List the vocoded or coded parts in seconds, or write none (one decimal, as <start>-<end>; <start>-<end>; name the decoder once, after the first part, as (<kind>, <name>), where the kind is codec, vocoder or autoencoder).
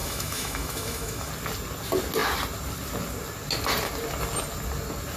0.0-1.3 (autoencoder, DAC-VAE)